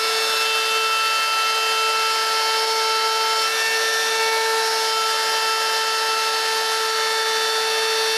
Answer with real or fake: real